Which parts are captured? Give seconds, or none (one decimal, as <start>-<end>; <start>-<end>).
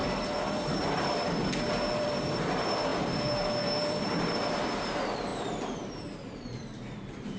none